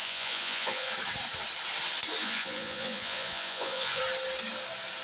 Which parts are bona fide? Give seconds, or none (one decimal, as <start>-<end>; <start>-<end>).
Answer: 0.9-2.2; 4.0-5.0